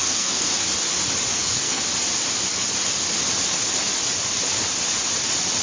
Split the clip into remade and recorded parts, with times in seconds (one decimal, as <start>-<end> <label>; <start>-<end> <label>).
0.0-0.5 remade; 0.5-1.3 recorded; 1.3-1.8 remade; 1.8-5.6 recorded